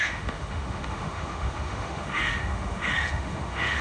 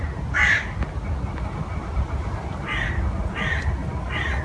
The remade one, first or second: first